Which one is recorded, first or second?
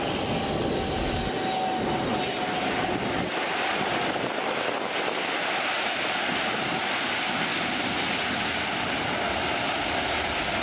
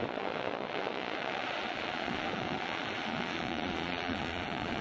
first